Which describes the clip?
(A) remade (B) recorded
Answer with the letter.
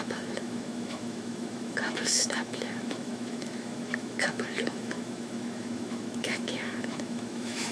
A